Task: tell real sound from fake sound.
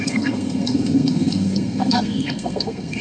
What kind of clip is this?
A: fake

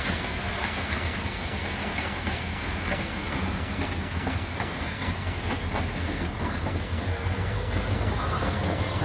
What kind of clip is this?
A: fake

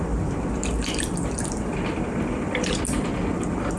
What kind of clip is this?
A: real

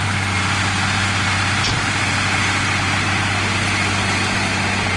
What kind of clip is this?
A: real